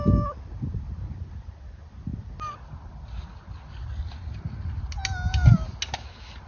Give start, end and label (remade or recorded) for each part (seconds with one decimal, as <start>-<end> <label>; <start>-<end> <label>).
0.0-6.5 recorded